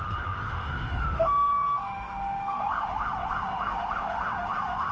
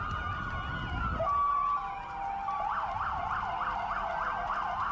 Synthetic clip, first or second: first